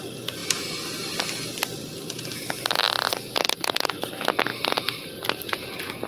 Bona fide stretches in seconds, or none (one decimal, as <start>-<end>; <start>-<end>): 0.0-6.1